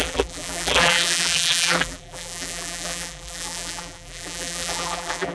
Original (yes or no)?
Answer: no